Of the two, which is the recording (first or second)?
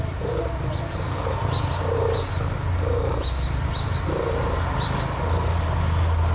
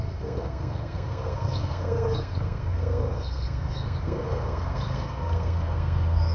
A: first